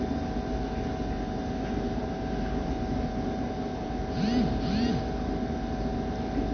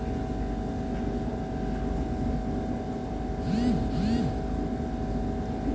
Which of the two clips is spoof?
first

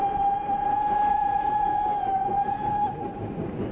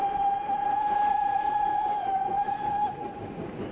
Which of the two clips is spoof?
second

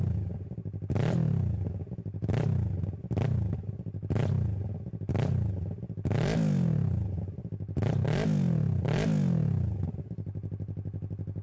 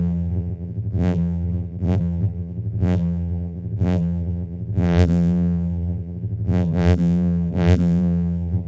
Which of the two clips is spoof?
second